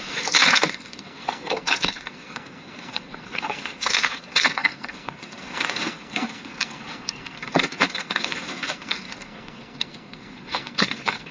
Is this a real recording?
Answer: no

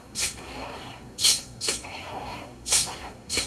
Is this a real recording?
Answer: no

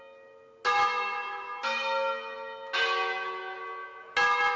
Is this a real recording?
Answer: yes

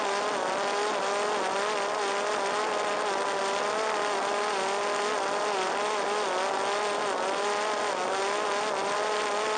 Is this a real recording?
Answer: yes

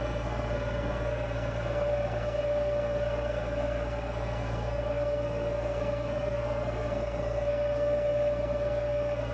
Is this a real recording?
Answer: no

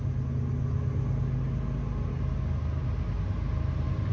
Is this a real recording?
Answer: yes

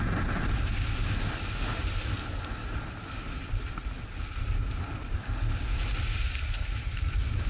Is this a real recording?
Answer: yes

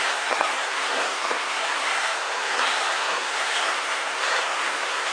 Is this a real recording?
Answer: no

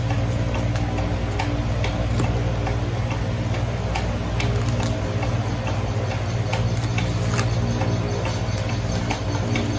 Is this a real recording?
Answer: yes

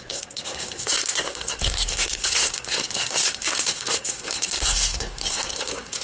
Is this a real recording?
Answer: no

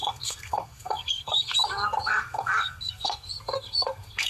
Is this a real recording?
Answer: no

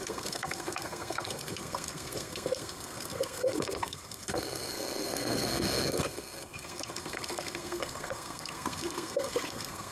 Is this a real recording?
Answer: no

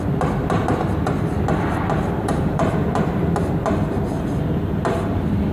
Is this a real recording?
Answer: yes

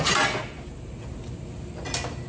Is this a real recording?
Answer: yes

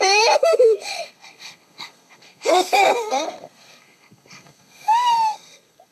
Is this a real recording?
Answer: no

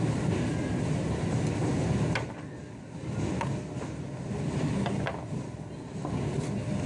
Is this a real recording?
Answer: yes